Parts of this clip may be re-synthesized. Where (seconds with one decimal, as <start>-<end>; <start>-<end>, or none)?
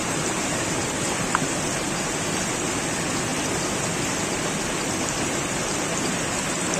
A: none